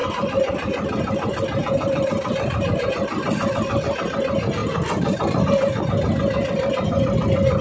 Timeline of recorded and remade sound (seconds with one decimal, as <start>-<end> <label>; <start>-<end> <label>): 0.0-2.9 remade; 2.9-4.6 recorded; 4.6-5.4 remade; 5.4-7.6 recorded